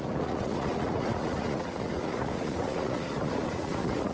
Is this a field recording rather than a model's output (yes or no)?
no